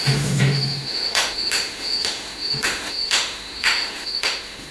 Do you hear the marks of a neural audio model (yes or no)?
yes